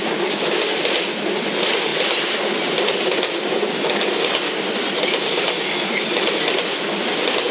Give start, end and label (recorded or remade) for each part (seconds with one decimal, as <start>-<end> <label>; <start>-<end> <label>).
0.0-7.5 recorded